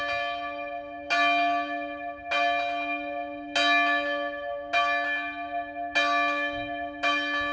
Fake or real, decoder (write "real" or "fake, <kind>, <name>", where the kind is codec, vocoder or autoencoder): real